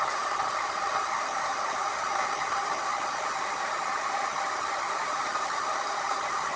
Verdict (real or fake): real